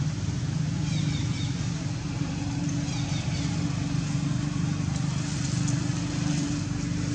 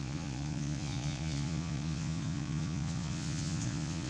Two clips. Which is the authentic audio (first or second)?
first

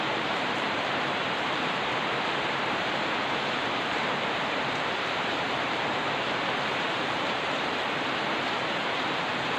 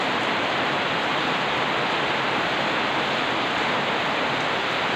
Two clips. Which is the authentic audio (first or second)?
second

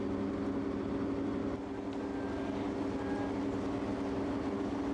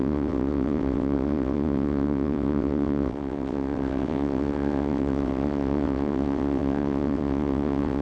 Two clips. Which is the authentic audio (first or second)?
first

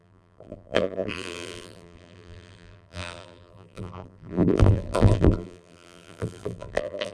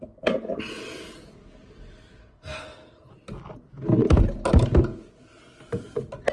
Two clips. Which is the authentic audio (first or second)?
second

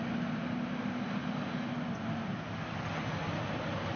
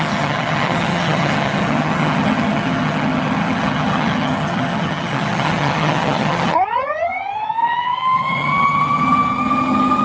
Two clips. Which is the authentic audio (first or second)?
first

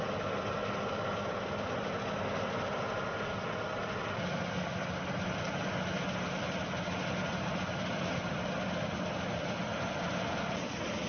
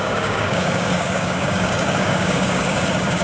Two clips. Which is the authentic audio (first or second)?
first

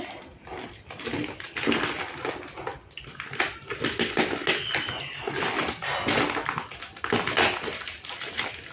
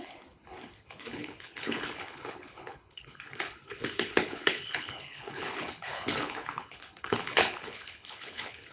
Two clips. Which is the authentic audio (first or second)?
first